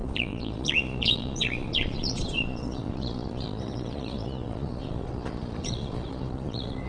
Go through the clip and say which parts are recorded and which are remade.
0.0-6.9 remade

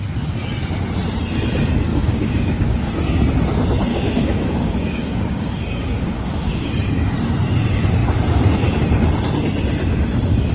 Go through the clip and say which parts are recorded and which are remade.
0.0-1.9 recorded; 1.9-2.8 remade; 2.8-3.9 recorded; 3.9-6.7 remade; 6.7-10.5 recorded

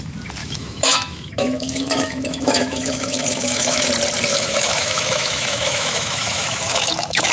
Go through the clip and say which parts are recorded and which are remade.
0.0-0.4 recorded; 0.4-3.9 remade; 3.9-4.3 recorded; 4.3-7.3 remade

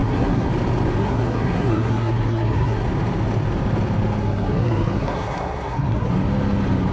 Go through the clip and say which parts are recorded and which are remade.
0.0-0.5 remade; 0.5-1.0 recorded; 1.0-2.8 remade; 2.8-4.2 recorded; 4.2-6.1 remade; 6.1-6.9 recorded

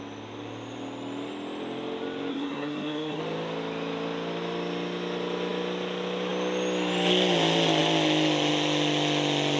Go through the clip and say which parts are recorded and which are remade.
0.0-2.3 recorded; 2.3-3.2 remade; 3.2-9.6 recorded

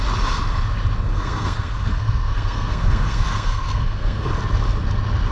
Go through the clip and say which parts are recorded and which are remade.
0.0-1.1 recorded; 1.1-4.3 remade; 4.3-5.3 recorded